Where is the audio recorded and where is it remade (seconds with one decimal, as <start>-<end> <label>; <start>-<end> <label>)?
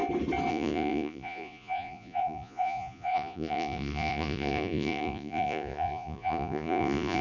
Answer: 0.0-0.5 recorded; 0.5-7.2 remade